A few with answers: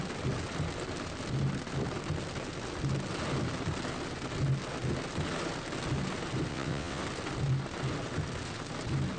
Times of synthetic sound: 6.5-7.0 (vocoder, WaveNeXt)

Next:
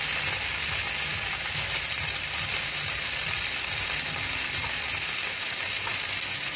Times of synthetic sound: none

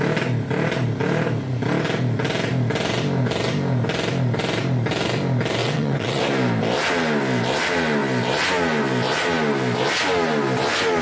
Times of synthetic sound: 5.6-6.2 (vocoder, WaveNeXt)